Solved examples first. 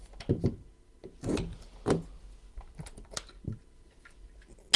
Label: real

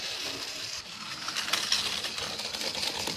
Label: real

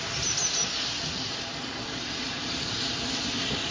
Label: real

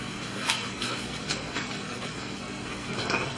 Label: fake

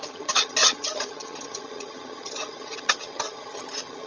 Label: fake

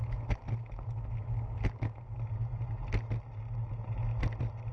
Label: real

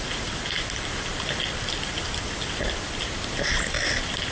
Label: real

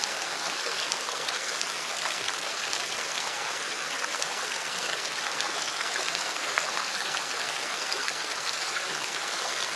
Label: fake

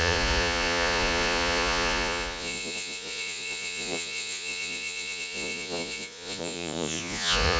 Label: fake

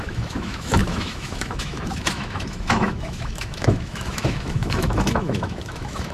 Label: fake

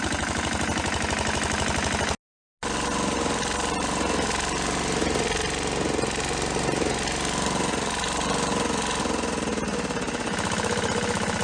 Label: real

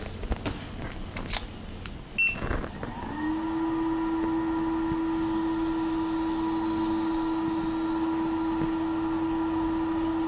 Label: real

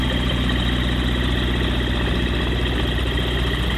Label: real